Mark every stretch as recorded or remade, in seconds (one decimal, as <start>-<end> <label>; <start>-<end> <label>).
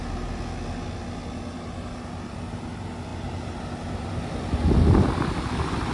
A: 0.0-5.9 recorded